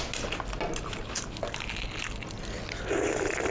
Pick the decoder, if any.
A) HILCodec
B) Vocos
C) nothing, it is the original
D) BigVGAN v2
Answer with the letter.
C